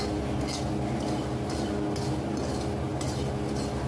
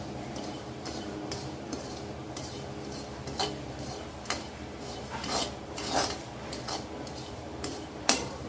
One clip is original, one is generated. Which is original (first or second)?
first